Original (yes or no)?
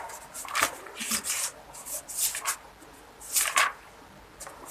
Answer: yes